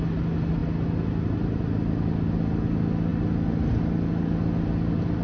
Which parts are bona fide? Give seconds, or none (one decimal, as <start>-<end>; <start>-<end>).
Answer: 0.0-5.2